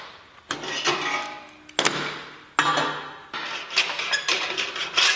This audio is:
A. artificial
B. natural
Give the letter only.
B